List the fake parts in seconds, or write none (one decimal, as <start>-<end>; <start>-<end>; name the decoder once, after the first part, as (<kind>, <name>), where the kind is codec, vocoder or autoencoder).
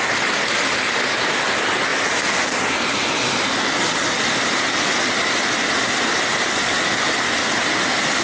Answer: none